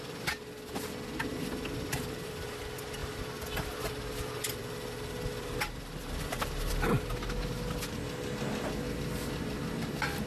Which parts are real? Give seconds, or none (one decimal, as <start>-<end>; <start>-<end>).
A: 0.0-1.3; 2.6-3.0; 6.7-10.3